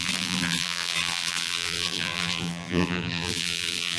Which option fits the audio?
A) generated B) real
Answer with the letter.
A